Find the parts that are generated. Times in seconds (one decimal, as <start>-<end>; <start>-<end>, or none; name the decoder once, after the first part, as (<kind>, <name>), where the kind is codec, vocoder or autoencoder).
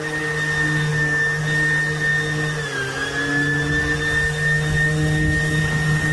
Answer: none